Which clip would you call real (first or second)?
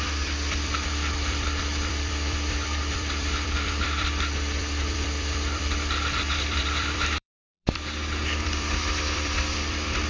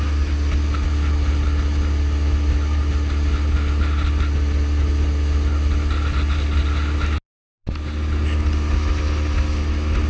second